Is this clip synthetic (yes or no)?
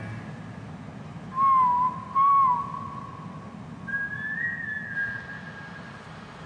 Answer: no